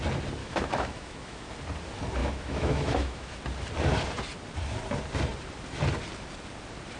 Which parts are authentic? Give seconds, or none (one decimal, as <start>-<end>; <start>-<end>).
0.0-0.4; 1.5-2.2; 3.4-7.0